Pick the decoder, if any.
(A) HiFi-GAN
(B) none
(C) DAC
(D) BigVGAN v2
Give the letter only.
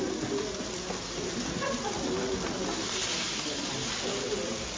B